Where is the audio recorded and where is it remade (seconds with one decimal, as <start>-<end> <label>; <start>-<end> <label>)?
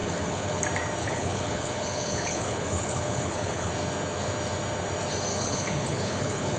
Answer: 0.0-0.6 remade; 0.6-1.0 recorded; 1.0-3.7 remade; 3.7-5.3 recorded; 5.3-6.6 remade